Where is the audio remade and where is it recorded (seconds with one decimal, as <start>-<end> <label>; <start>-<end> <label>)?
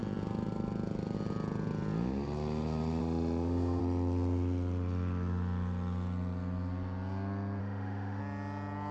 0.0-3.0 recorded; 3.0-3.8 remade; 3.8-7.6 recorded; 7.6-8.2 remade; 8.2-8.9 recorded